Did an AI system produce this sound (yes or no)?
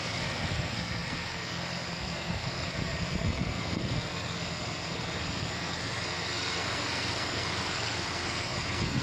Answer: yes